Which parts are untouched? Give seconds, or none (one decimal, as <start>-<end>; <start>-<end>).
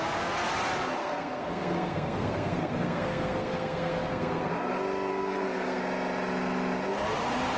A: 0.0-1.0; 4.5-5.1; 5.8-7.6